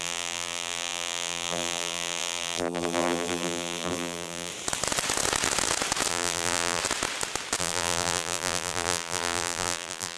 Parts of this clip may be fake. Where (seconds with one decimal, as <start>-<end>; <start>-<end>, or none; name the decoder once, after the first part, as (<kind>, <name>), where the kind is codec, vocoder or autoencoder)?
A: 0.0-4.5 (vocoder, BigVGAN v2); 6.1-6.8; 7.6-10.2